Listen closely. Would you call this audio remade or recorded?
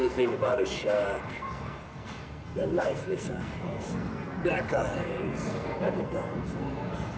remade